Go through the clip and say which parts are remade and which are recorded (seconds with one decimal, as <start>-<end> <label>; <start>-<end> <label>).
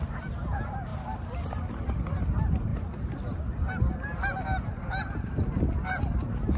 0.0-6.6 recorded